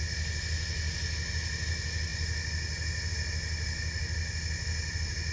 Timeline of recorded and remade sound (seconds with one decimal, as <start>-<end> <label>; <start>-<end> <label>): 0.0-5.3 recorded